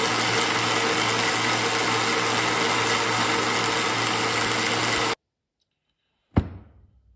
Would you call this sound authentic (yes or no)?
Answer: yes